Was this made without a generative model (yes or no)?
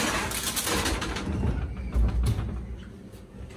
yes